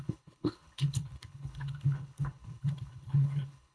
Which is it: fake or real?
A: fake